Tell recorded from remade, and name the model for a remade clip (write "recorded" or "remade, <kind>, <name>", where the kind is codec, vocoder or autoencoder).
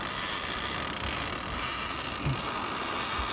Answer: recorded